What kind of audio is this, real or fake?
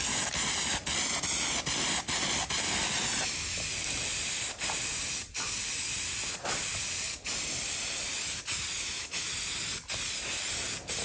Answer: real